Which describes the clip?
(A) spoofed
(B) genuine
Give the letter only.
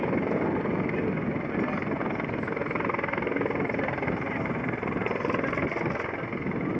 B